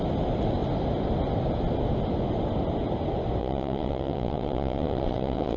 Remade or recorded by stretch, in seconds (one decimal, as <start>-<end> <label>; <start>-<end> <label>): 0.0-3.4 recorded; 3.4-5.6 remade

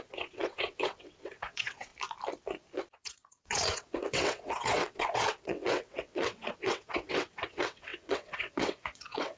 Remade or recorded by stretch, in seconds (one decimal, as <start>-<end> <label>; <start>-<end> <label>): 0.0-1.9 remade; 1.9-2.9 recorded; 2.9-9.4 remade

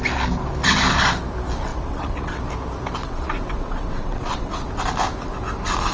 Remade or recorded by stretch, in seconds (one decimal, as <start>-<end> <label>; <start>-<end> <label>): 0.0-1.7 recorded; 1.7-2.4 remade; 2.4-3.0 recorded; 3.0-4.7 remade; 4.7-5.9 recorded